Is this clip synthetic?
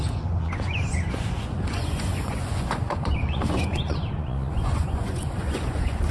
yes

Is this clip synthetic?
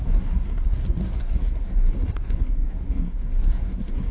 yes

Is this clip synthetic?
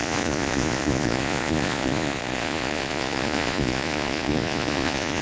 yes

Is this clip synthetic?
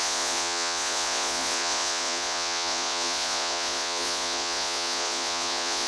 yes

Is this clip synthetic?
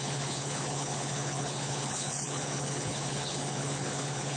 yes